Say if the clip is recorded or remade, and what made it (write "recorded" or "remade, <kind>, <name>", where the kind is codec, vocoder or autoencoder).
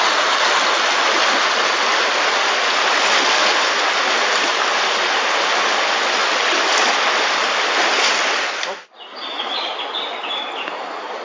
recorded